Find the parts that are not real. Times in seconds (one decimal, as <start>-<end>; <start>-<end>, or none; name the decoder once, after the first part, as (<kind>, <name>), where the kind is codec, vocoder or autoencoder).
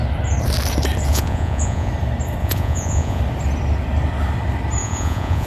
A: 1.1-1.9 (vocoder, Vocos); 2.4-3.2; 4.8-5.5